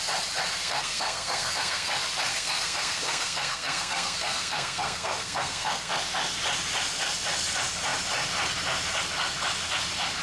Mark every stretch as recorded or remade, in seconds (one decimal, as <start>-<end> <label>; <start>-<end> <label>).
0.0-0.6 recorded; 0.6-1.9 remade; 1.9-2.3 recorded; 2.3-5.9 remade; 5.9-10.2 recorded